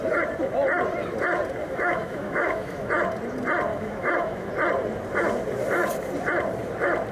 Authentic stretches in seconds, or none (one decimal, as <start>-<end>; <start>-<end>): 0.0-1.6; 2.9-3.7; 4.5-7.1